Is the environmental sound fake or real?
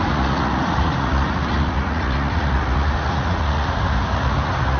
fake